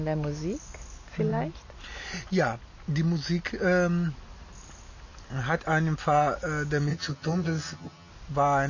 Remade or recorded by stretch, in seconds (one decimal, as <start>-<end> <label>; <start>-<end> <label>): 0.0-6.9 recorded; 6.9-8.1 remade; 8.1-8.7 recorded